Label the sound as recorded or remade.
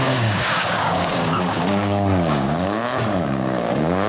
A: remade